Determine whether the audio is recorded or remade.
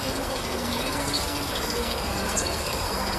remade